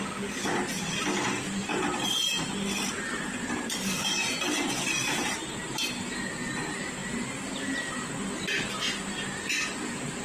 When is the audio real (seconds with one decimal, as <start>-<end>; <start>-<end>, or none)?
0.0-1.6; 5.4-10.2